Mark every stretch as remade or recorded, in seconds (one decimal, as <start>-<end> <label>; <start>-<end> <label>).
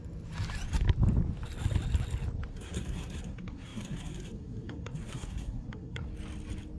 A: 0.0-2.5 recorded; 2.5-6.1 remade; 6.1-6.8 recorded